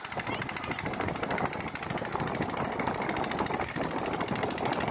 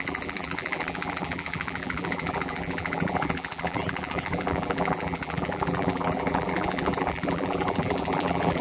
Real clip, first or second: first